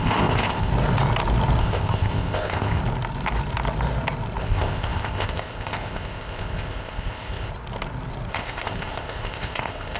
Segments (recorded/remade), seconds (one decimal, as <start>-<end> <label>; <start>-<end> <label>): 0.0-0.7 remade; 0.7-1.6 recorded; 1.6-2.8 remade; 2.8-4.4 recorded; 4.4-7.5 remade; 7.5-8.3 recorded; 8.3-10.0 remade